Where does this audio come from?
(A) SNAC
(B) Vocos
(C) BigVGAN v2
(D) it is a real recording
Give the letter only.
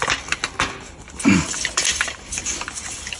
D